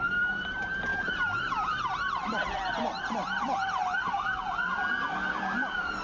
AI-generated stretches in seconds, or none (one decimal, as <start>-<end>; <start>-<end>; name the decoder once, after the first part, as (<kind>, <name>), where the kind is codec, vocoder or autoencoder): 0.0-6.0 (vocoder, BigVGAN v2)